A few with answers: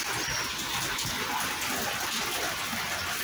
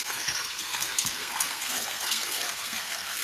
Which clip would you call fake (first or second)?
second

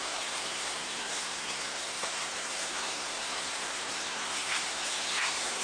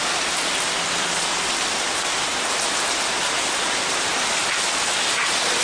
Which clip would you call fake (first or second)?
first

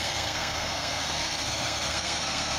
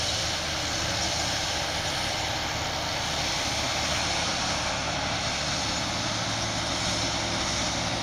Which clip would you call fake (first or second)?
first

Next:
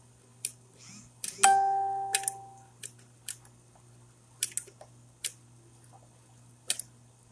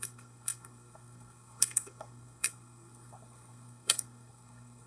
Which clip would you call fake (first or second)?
second